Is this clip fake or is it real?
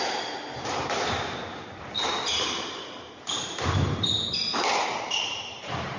fake